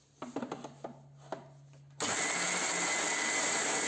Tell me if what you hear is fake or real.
real